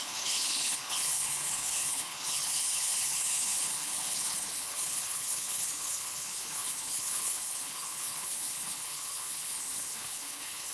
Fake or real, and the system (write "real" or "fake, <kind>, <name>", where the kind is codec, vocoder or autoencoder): fake, codec, HILCodec